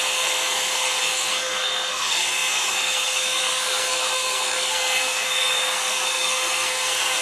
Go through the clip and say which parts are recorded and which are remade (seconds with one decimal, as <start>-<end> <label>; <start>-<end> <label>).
0.0-7.2 remade